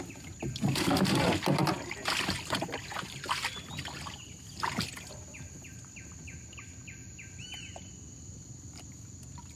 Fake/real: real